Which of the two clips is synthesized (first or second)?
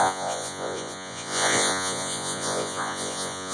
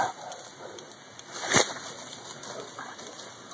first